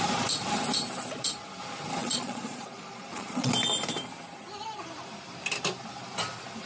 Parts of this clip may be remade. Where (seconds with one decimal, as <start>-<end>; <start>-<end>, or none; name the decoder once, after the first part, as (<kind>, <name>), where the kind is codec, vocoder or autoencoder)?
2.0-3.5 (vocoder, Vocos)